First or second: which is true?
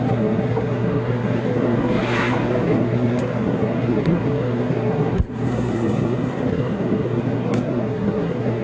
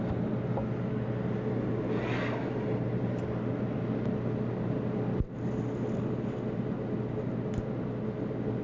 second